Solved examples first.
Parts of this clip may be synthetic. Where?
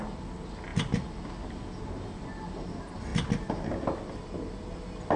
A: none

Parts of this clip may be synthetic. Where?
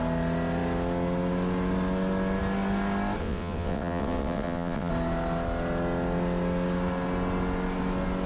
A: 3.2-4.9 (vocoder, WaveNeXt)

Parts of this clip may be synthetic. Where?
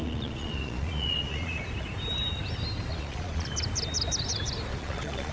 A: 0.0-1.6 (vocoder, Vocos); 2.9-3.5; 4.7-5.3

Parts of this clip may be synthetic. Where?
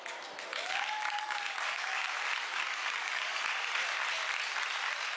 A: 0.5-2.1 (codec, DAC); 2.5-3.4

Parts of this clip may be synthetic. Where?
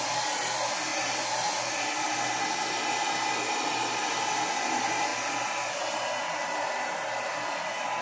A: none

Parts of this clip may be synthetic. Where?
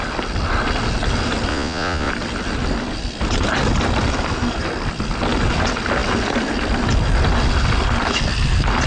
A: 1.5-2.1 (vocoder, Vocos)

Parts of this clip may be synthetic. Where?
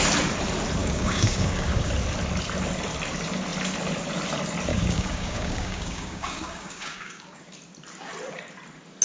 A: 0.8-1.9 (codec, DAC); 4.7-7.4